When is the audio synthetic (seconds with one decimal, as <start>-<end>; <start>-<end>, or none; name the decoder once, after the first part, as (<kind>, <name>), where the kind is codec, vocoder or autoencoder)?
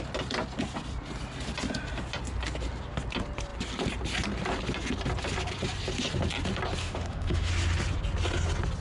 6.8-7.5 (autoencoder, DAC-VAE)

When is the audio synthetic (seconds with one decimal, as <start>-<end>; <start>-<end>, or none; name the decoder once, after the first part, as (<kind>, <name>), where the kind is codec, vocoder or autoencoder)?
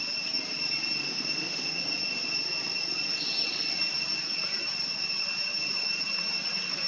1.0-1.8 (autoencoder, DAC-VAE)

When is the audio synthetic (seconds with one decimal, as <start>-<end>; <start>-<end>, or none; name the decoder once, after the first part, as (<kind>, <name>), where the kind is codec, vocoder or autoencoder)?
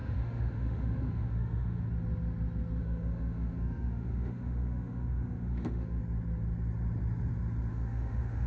0.0-1.8 (autoencoder, DAC-VAE); 2.8-6.0; 7.7-8.5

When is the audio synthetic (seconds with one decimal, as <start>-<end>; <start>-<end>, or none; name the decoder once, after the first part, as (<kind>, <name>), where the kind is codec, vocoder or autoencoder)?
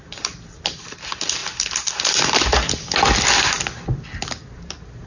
none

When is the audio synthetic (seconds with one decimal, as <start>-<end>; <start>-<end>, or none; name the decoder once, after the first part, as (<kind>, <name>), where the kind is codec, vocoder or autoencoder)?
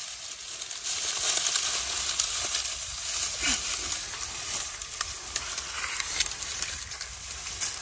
none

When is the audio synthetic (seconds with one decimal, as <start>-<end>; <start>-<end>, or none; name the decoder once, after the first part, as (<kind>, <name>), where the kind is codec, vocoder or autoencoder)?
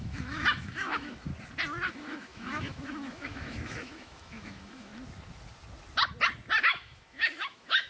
0.0-1.3 (autoencoder, DAC-VAE); 1.9-4.9; 6.6-7.9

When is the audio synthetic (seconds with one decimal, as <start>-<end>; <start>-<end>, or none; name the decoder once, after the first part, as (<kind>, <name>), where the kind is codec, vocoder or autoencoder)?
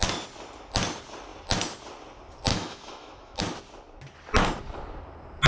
2.5-3.4 (autoencoder, DAC-VAE)